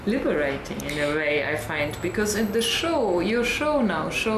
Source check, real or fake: real